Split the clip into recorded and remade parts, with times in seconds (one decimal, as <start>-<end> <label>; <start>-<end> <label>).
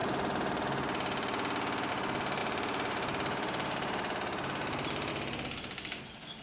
0.0-2.4 recorded; 2.4-5.1 remade; 5.1-6.4 recorded